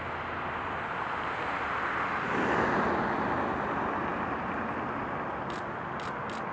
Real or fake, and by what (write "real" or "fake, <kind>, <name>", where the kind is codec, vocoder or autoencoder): real